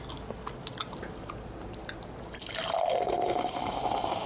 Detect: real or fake real